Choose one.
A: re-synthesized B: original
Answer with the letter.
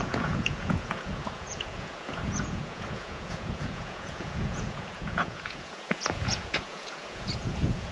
A